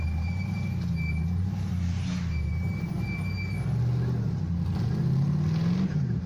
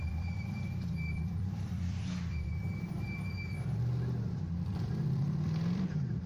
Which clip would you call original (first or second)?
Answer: first